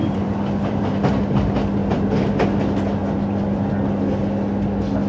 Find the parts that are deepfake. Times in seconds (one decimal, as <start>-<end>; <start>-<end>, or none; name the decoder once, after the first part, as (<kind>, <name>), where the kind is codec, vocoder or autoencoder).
0.0-0.8 (vocoder, BigVGAN v2); 3.0-3.7